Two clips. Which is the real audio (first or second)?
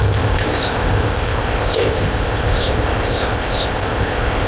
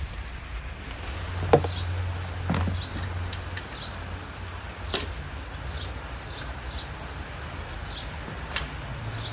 second